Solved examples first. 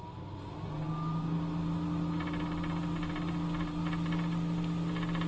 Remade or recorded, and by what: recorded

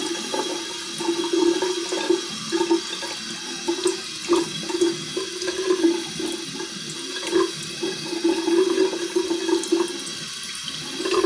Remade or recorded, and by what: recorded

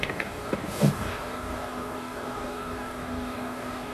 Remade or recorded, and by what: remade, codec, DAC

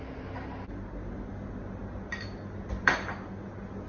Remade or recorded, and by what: recorded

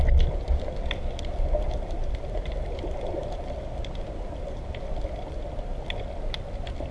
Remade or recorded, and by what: recorded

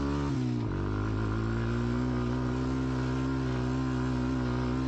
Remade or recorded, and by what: recorded